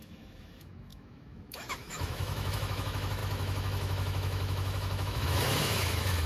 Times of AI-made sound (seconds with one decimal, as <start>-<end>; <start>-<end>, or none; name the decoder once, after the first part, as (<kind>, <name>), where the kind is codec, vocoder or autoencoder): 0.0-6.3 (autoencoder, DAC-VAE)